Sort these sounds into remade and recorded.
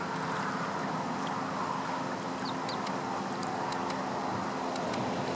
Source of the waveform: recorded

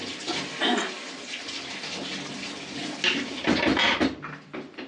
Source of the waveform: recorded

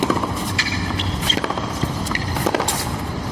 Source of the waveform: recorded